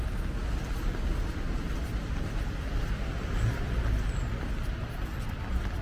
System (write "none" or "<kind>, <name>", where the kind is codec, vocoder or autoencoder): none